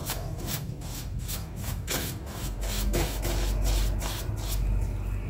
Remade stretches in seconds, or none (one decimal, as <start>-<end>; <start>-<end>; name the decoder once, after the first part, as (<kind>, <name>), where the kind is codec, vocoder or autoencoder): 0.0-3.2 (codec, DAC)